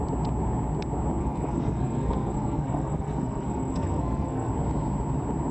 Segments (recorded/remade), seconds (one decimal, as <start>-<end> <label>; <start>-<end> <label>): 0.0-1.2 recorded; 1.2-4.5 remade; 4.5-5.5 recorded